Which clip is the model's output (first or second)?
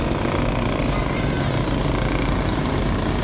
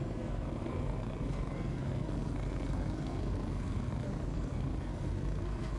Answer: second